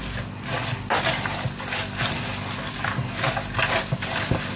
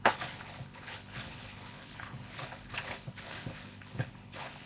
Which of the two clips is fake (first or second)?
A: second